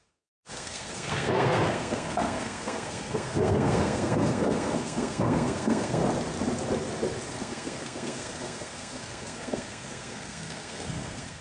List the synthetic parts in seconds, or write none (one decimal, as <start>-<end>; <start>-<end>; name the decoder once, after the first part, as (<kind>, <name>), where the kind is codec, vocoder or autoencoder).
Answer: 0.0-6.0 (codec, SNAC); 7.4-11.4

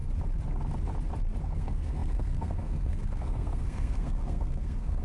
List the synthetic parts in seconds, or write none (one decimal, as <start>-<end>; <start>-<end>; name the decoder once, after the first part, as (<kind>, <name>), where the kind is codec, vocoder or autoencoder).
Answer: 1.4-5.0 (codec, SNAC)

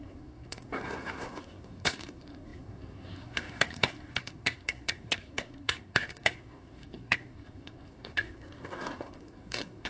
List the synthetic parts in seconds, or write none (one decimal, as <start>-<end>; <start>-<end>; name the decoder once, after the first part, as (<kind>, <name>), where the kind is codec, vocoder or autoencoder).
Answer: 0.0-9.9 (codec, SNAC)

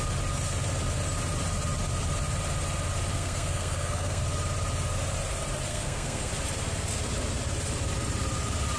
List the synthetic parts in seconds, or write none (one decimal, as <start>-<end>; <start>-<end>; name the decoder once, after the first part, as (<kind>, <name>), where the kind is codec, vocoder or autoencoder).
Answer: 3.1-4.2 (codec, SNAC); 5.7-6.3